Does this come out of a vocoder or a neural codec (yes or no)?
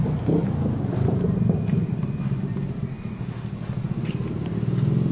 no